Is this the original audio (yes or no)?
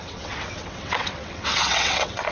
no